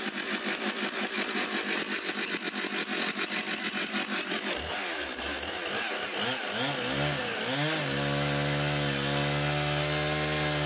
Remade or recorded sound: recorded